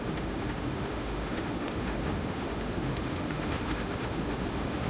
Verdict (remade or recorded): remade